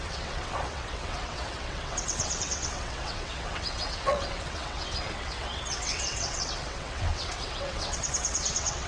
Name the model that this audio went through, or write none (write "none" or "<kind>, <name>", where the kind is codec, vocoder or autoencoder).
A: vocoder, WaveNeXt